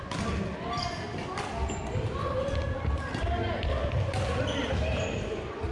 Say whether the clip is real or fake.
real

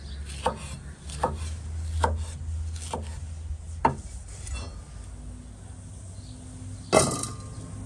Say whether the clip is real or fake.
real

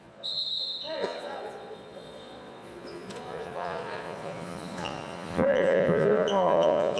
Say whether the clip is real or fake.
fake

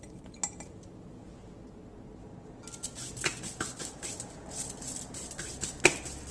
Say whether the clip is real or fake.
real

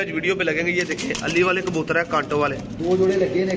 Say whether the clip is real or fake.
real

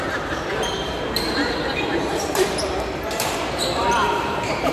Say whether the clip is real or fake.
fake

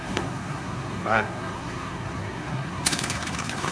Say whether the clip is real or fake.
fake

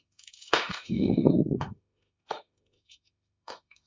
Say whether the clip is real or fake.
fake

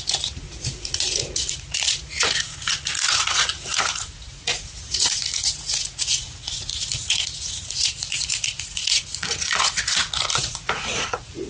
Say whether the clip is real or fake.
fake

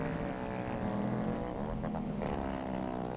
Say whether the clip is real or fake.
real